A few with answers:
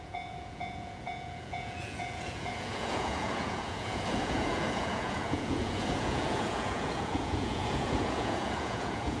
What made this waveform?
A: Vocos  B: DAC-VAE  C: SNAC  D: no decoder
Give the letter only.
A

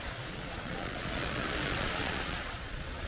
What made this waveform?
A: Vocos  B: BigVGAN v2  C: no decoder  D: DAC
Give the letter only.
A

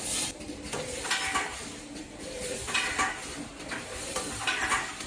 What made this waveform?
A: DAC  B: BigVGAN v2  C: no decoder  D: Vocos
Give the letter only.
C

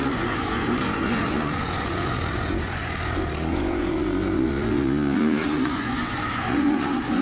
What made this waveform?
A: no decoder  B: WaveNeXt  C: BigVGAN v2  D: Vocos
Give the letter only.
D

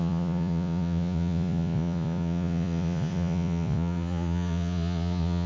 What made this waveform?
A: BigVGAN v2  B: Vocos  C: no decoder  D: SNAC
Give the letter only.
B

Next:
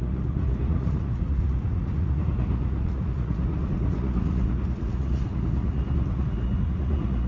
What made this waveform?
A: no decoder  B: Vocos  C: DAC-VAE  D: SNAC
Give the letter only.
B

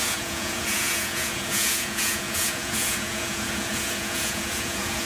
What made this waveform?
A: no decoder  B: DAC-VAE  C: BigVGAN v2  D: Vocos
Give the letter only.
D